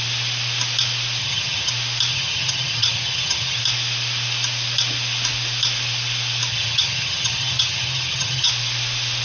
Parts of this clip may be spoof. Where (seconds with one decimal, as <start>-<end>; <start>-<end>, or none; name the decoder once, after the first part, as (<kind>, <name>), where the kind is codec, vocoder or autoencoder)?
1.2-1.7 (vocoder, HiFi-GAN); 2.1-3.6; 6.5-8.5

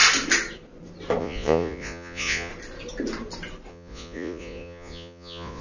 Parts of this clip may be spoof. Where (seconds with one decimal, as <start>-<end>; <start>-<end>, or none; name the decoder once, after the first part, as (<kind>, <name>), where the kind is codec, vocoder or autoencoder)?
1.2-2.5 (vocoder, Vocos); 3.7-5.6

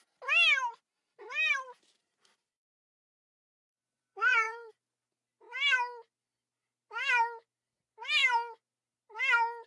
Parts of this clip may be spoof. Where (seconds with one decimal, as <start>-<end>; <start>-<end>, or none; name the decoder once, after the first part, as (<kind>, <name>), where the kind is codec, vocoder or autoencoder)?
3.1-4.7 (vocoder, Vocos)